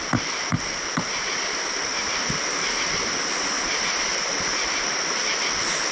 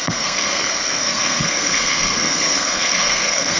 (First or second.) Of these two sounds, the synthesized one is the second